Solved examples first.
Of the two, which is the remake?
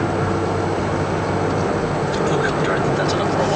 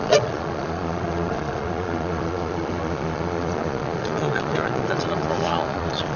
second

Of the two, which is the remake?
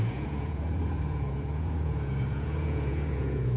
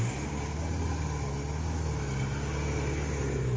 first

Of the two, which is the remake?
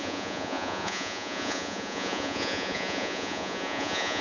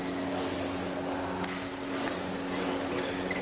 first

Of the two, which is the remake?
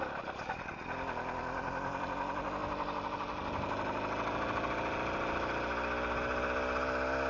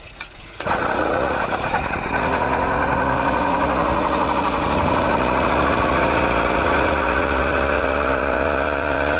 second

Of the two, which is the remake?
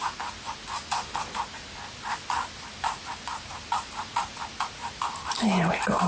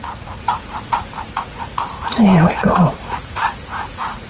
second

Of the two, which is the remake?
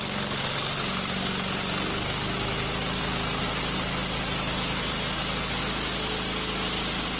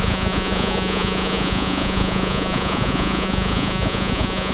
second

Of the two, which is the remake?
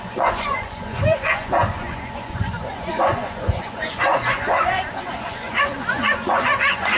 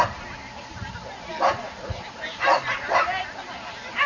first